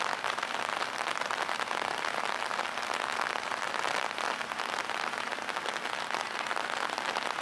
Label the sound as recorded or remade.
recorded